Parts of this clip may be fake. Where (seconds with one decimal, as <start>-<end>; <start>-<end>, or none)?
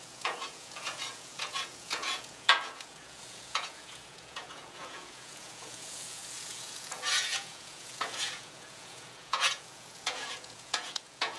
0.0-11.4